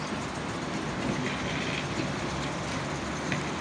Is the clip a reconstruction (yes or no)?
no